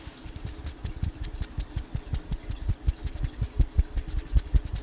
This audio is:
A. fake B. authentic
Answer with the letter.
B